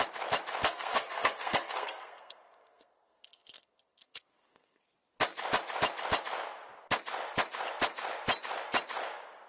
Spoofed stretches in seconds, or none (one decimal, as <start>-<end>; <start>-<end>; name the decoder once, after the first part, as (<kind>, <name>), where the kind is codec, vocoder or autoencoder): 0.6-4.8 (codec, SNAC)